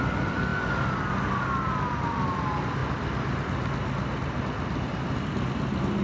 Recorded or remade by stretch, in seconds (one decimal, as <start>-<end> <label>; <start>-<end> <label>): 0.0-6.0 recorded

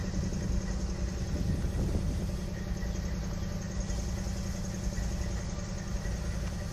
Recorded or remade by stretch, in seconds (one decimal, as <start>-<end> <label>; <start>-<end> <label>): 0.0-6.7 recorded